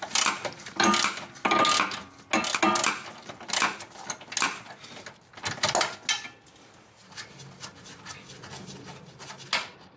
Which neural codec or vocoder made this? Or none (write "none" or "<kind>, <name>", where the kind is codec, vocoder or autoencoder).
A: none